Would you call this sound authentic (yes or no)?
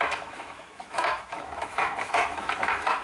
no